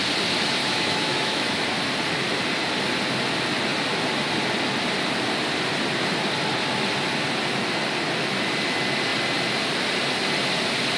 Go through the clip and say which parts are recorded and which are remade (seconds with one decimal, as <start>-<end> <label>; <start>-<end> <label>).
0.0-0.6 recorded; 0.6-1.6 remade; 1.6-11.0 recorded